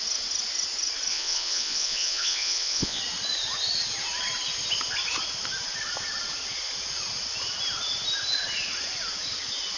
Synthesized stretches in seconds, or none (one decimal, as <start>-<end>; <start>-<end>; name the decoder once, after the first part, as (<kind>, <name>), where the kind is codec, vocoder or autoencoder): 1.1-3.0 (vocoder, Vocos)